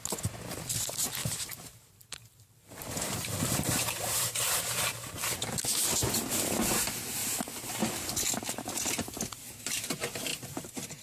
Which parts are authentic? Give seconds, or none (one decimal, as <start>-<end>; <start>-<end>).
0.0-1.2; 4.8-11.0